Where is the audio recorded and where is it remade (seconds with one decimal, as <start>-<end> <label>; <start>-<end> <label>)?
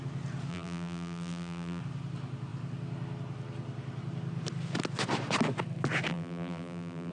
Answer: 0.0-0.5 recorded; 0.5-1.8 remade; 1.8-6.1 recorded; 6.1-7.1 remade